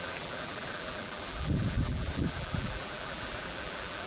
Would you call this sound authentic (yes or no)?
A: no